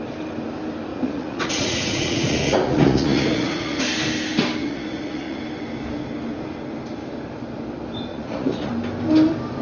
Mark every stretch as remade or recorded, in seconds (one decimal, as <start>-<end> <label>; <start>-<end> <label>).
0.0-0.9 recorded; 0.9-3.8 remade; 3.8-4.6 recorded; 4.6-5.4 remade; 5.4-8.1 recorded; 8.1-8.7 remade; 8.7-9.6 recorded

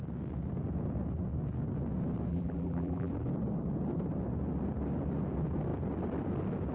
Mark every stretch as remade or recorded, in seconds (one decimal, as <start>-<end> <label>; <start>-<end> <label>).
0.0-2.3 recorded; 2.3-3.1 remade; 3.1-6.7 recorded

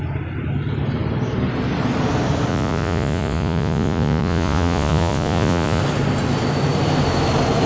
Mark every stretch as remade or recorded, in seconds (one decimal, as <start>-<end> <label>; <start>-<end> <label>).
0.0-2.5 recorded; 2.5-5.8 remade; 5.8-7.7 recorded

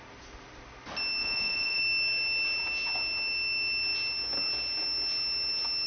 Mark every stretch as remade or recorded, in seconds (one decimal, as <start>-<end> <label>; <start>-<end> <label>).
0.0-1.2 recorded; 1.2-1.8 remade; 1.8-5.9 recorded